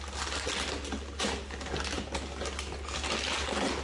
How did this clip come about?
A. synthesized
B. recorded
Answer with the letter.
B